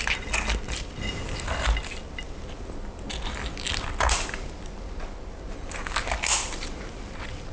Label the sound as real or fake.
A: real